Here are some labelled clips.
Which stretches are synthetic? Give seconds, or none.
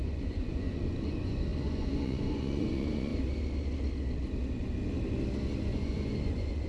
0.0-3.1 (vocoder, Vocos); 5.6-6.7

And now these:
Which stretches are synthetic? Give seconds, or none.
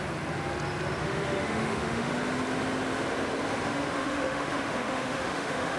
1.0-2.1 (autoencoder, DAC-VAE); 3.7-5.8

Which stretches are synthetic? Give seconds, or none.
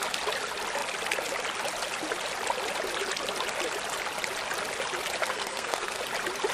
5.2-6.0 (codec, SNAC)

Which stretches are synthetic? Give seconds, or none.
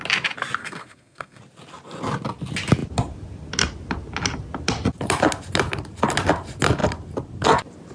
0.6-1.4 (codec, SNAC)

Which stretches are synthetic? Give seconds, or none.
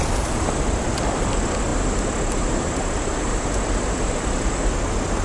none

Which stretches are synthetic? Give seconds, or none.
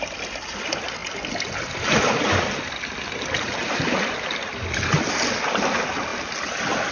none